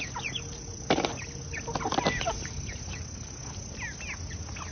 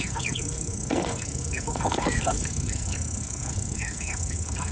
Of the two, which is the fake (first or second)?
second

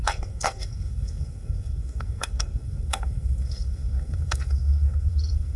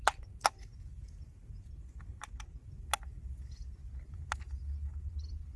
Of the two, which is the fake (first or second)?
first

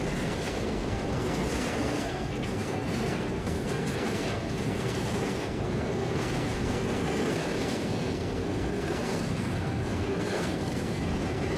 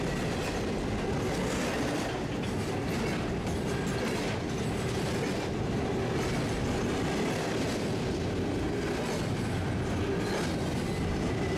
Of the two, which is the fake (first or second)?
first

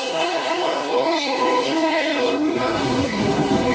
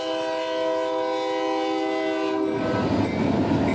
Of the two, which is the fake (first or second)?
first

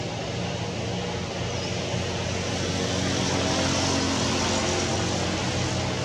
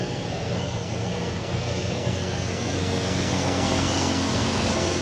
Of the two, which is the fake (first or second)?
second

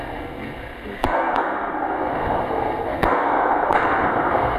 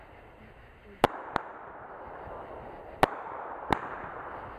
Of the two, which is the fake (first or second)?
first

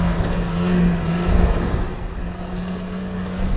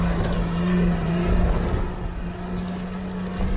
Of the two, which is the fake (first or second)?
first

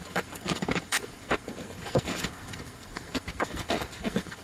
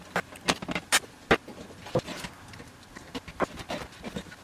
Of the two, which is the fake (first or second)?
first